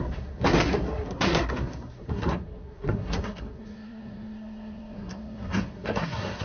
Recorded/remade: remade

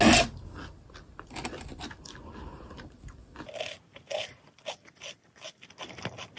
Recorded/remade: recorded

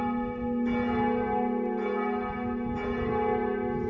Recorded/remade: recorded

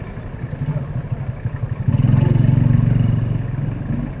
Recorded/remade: recorded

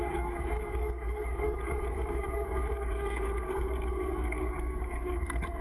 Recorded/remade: remade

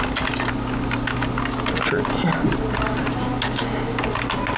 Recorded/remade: recorded